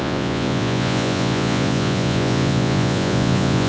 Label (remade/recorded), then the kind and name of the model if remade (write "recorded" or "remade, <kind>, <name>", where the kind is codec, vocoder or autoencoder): remade, vocoder, Vocos